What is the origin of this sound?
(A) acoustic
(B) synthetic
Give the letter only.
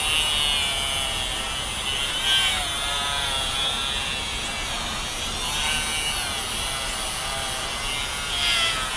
A